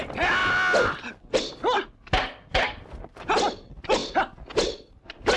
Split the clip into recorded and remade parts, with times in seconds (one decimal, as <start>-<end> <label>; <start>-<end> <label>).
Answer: 0.0-5.4 recorded